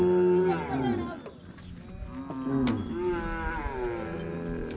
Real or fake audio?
real